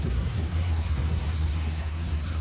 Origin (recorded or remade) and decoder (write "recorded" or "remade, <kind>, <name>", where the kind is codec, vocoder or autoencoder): remade, codec, SNAC